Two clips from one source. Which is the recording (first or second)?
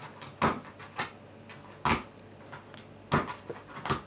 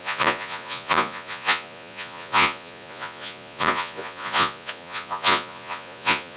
first